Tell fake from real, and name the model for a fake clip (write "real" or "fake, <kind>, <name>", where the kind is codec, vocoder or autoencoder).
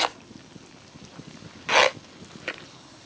real